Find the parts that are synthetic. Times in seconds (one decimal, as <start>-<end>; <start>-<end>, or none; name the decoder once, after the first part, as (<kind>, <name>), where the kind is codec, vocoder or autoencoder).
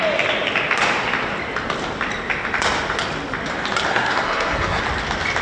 3.9-4.8 (codec, SNAC)